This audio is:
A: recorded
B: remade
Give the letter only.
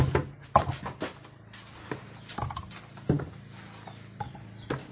A